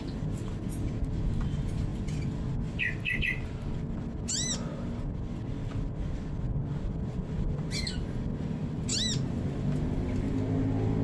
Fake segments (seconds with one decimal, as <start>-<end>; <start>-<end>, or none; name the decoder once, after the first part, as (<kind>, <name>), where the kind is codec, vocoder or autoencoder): none